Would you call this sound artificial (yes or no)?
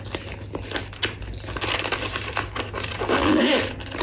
no